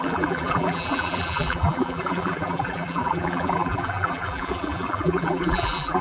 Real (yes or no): no